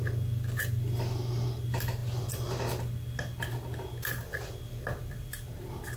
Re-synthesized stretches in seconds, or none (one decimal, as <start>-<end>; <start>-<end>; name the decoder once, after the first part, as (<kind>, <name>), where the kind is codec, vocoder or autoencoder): none